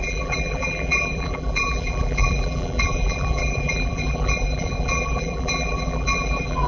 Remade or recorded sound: remade